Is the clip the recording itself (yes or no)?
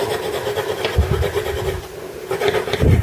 yes